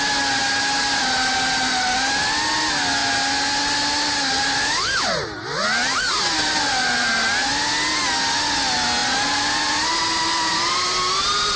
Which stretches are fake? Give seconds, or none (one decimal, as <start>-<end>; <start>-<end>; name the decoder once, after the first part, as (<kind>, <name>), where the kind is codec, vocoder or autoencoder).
none